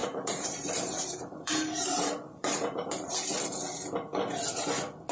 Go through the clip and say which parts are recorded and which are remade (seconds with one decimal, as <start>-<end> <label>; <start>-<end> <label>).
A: 0.0-3.1 remade; 3.1-5.1 recorded

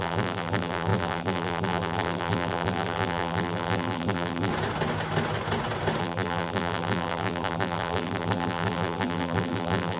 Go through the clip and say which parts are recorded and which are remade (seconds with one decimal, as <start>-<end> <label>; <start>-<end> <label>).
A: 0.0-4.5 remade; 4.5-6.0 recorded; 6.0-10.0 remade

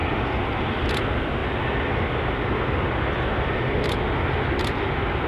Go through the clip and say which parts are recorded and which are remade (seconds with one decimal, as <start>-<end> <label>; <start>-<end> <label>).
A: 0.0-5.3 recorded

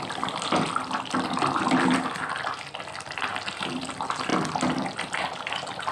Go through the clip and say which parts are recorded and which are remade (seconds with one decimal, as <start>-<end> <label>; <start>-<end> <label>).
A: 0.0-3.3 remade; 3.3-3.8 recorded; 3.8-4.3 remade; 4.3-5.9 recorded